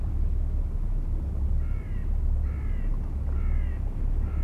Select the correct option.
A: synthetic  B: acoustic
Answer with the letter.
B